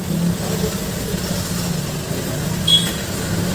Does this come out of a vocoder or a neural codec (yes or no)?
no